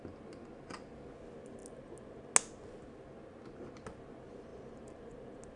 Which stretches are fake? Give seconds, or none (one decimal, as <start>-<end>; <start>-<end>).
none